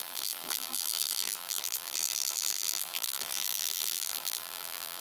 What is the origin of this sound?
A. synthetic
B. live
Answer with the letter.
A